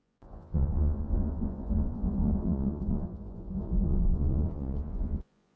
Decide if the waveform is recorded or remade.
remade